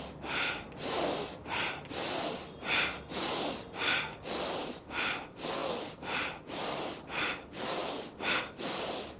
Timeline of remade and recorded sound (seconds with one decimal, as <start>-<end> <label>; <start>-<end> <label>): 0.0-9.2 recorded